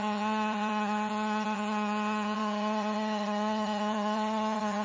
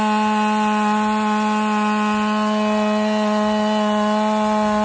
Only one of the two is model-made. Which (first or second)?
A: first